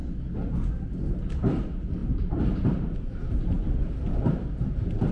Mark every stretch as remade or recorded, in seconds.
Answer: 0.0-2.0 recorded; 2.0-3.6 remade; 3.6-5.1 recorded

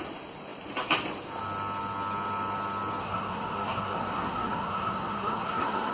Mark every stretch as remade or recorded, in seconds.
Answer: 0.0-3.0 recorded; 3.0-5.9 remade

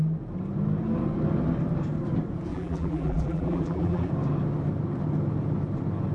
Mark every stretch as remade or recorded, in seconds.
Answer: 0.0-2.5 recorded; 2.5-4.1 remade; 4.1-6.1 recorded

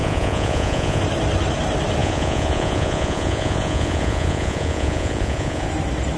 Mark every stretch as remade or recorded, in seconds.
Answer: 0.0-1.0 remade; 1.0-2.0 recorded; 2.0-5.7 remade; 5.7-6.2 recorded

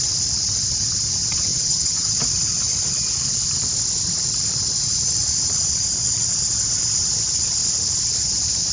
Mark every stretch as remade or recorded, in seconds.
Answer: 0.0-1.5 recorded; 1.5-2.2 remade; 2.2-8.7 recorded

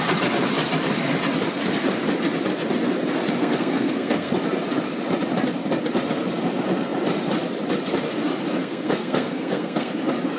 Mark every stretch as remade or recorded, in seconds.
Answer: 0.0-3.4 recorded; 3.4-4.3 remade; 4.3-8.6 recorded; 8.6-9.9 remade; 9.9-10.4 recorded

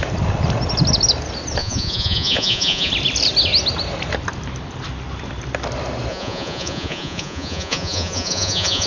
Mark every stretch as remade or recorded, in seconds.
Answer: 0.0-1.6 recorded; 1.6-2.9 remade; 2.9-6.1 recorded; 6.1-8.9 remade

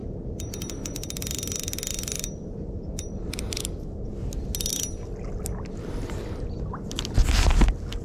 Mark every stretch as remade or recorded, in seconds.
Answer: 0.0-3.3 remade; 3.3-8.0 recorded